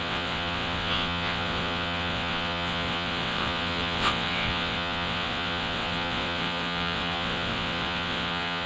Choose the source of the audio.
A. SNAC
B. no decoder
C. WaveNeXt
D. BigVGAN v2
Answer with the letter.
C